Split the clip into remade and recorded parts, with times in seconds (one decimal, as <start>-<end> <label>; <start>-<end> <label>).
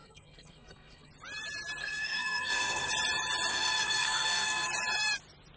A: 0.0-1.1 remade; 1.1-1.8 recorded; 1.8-2.9 remade; 2.9-3.5 recorded; 3.5-4.7 remade; 4.7-5.6 recorded